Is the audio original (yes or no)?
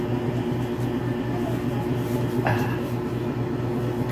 yes